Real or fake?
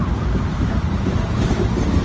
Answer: real